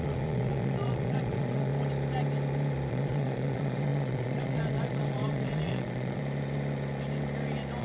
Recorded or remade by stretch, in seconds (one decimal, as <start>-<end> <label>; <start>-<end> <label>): 0.0-1.7 remade; 1.7-2.9 recorded; 2.9-6.2 remade; 6.2-7.8 recorded

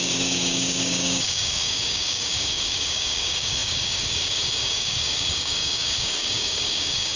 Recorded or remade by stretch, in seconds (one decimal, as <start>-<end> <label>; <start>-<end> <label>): 0.0-7.2 remade

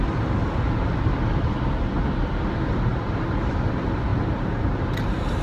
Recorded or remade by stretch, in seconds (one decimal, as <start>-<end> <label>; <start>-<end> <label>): 0.0-2.9 recorded; 2.9-3.5 remade; 3.5-4.1 recorded; 4.1-4.6 remade; 4.6-5.4 recorded